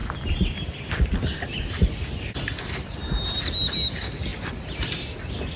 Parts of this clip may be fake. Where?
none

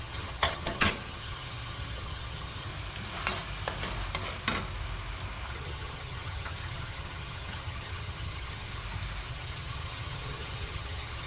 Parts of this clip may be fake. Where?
0.0-2.7 (vocoder, HiFi-GAN); 5.5-8.8; 9.3-11.3

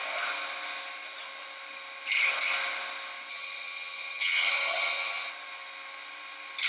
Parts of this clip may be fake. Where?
3.3-5.3 (vocoder, HiFi-GAN)

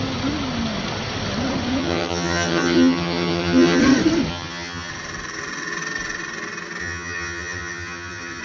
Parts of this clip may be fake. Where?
1.8-3.8 (vocoder, HiFi-GAN); 4.3-4.9; 6.8-8.4

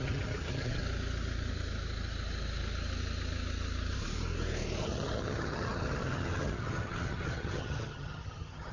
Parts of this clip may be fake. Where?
0.0-0.8 (vocoder, HiFi-GAN); 4.8-8.7

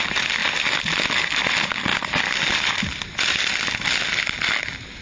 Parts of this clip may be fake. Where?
none

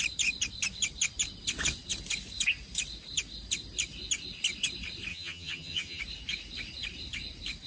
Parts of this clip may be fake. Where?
5.1-6.0 (vocoder, HiFi-GAN)